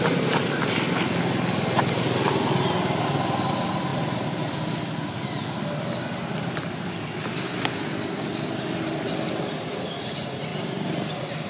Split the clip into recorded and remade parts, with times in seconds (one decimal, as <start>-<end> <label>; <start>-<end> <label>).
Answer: 0.0-11.5 recorded